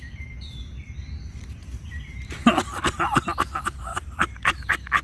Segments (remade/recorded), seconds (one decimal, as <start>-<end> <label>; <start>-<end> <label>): 0.0-1.6 recorded; 1.6-2.4 remade; 2.4-5.0 recorded